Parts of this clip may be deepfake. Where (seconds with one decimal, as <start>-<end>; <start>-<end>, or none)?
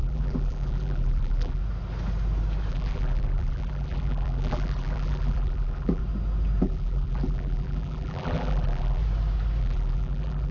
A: 0.0-1.6; 2.7-6.0; 6.6-9.0; 9.6-10.5